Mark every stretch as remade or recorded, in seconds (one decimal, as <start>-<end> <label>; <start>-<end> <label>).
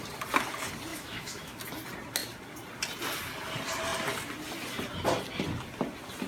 0.0-0.9 recorded; 0.9-1.6 remade; 1.6-6.3 recorded